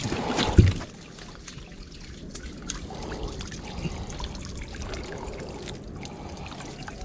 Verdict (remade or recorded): recorded